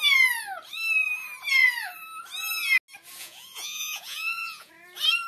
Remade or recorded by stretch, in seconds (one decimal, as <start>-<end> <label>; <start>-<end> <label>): 0.0-3.2 recorded; 3.2-4.7 remade; 4.7-5.3 recorded